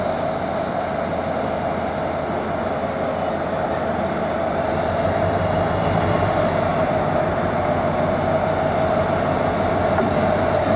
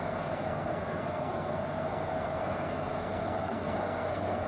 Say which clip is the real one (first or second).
first